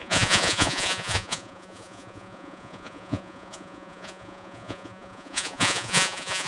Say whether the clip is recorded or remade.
remade